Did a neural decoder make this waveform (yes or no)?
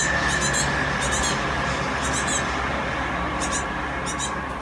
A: no